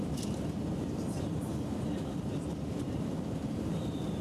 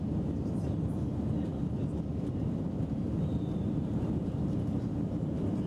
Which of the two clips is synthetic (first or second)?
first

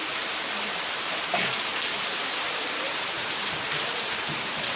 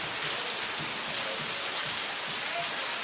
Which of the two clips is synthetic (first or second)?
first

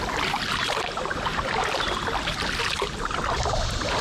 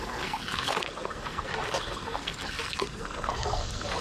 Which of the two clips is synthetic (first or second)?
second